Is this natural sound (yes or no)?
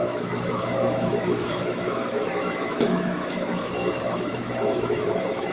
no